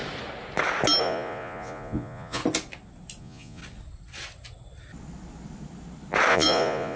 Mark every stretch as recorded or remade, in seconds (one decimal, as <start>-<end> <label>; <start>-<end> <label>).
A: 0.0-1.0 recorded; 1.0-2.4 remade; 2.4-3.2 recorded; 3.2-3.6 remade; 3.6-6.3 recorded; 6.3-7.0 remade